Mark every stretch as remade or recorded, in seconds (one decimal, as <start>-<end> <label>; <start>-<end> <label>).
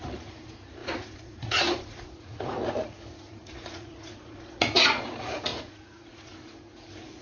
0.0-7.2 remade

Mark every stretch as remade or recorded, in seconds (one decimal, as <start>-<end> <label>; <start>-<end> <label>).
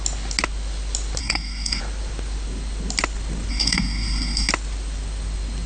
0.0-1.2 recorded; 1.2-1.8 remade; 1.8-3.5 recorded; 3.5-4.5 remade; 4.5-5.7 recorded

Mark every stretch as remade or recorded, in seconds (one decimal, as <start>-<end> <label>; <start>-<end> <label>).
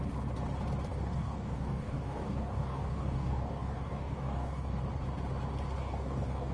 0.0-0.9 recorded; 0.9-4.8 remade; 4.8-5.8 recorded; 5.8-6.5 remade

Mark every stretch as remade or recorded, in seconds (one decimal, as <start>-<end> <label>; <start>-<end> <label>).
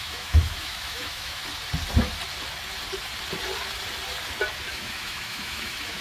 0.0-1.4 remade; 1.4-4.7 recorded; 4.7-6.0 remade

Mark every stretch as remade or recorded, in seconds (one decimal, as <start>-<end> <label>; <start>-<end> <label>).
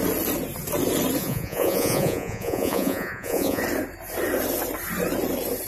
0.0-1.2 recorded; 1.2-3.6 remade; 3.6-5.7 recorded